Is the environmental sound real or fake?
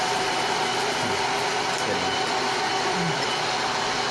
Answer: fake